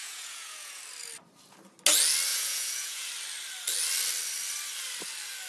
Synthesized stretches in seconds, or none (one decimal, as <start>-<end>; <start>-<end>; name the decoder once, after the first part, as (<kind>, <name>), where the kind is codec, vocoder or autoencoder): 0.0-0.8 (vocoder, Vocos); 2.3-3.1